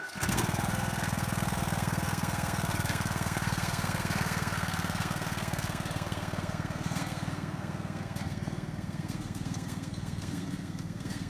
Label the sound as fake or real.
fake